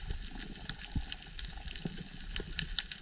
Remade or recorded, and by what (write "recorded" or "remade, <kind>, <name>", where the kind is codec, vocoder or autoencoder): recorded